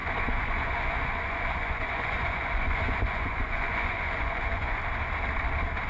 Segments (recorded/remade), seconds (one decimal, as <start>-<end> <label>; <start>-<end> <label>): 0.0-4.8 remade; 4.8-5.9 recorded